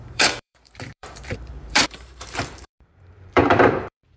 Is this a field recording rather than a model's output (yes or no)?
no